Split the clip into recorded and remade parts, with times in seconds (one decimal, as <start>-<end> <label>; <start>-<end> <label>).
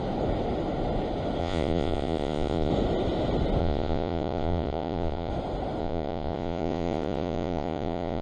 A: 0.0-1.4 recorded; 1.4-2.7 remade; 2.7-3.6 recorded; 3.6-5.3 remade; 5.3-5.8 recorded; 5.8-8.2 remade